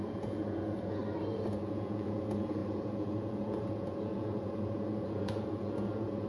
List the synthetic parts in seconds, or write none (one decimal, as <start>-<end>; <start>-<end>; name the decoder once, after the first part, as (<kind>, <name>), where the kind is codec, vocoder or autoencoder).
0.0-1.0 (vocoder, Vocos); 1.5-6.3